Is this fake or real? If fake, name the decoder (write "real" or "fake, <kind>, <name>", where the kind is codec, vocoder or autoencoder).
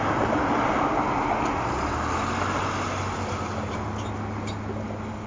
real